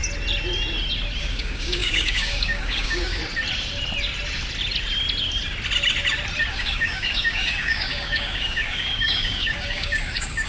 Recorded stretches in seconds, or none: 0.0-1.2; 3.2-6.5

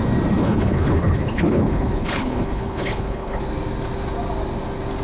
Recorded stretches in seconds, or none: 0.0-0.4; 3.4-5.0

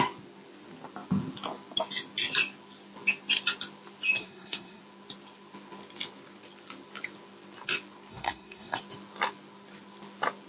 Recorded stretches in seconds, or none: 0.0-4.2; 4.8-8.1; 8.8-10.5

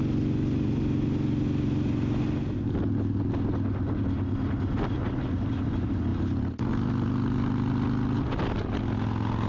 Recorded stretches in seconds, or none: 0.0-9.5